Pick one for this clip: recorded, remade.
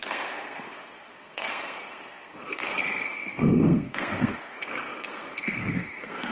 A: remade